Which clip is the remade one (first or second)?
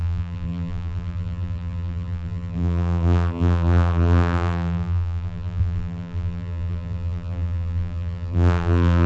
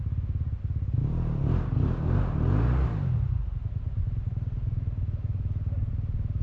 first